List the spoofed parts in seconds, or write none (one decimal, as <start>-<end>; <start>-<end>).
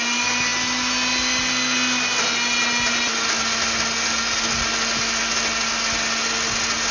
none